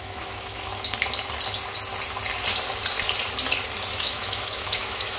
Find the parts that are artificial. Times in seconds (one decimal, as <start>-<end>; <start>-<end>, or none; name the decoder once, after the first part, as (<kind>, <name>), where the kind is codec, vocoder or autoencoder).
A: 0.0-0.7 (autoencoder, DAC-VAE); 3.8-5.2